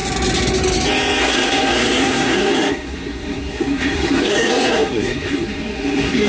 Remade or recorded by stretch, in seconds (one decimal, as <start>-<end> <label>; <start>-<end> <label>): 0.0-1.2 recorded; 1.2-6.3 remade